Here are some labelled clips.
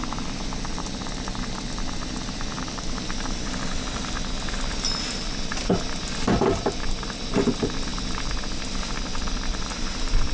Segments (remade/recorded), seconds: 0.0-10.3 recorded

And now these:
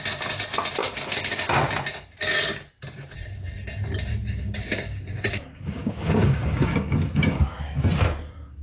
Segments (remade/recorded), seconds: 0.0-0.8 recorded; 0.8-1.6 remade; 1.6-4.1 recorded; 4.1-7.6 remade; 7.6-8.6 recorded

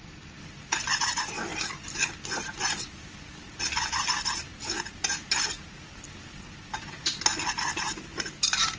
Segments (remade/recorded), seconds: 0.0-8.8 recorded